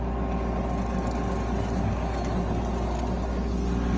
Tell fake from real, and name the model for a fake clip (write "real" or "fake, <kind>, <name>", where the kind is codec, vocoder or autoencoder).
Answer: real